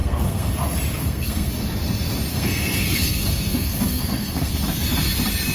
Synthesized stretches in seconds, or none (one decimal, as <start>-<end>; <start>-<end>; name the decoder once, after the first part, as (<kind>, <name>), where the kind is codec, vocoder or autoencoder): 0.0-0.5 (codec, SNAC); 1.0-1.5; 2.3-4.5